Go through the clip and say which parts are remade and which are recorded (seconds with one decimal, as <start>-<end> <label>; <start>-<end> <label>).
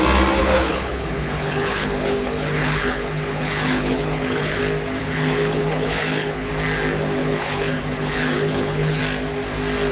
0.0-0.4 recorded; 0.4-4.6 remade; 4.6-5.0 recorded; 5.0-6.5 remade; 6.5-7.2 recorded; 7.2-9.0 remade; 9.0-9.9 recorded